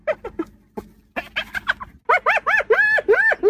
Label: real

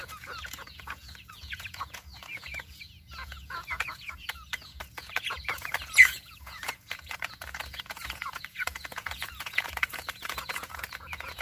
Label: fake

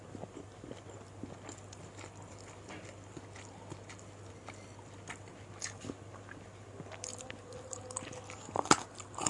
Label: real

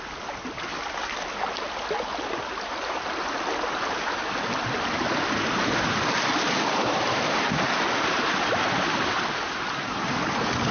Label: real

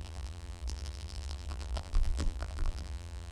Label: fake